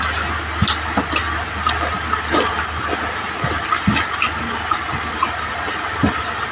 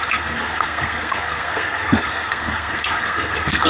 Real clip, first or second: first